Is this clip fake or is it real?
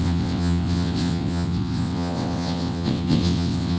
fake